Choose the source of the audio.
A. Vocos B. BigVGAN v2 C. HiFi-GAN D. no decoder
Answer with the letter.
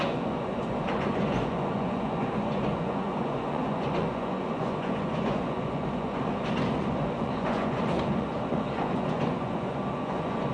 A